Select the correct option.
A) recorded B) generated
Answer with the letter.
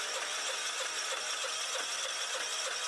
A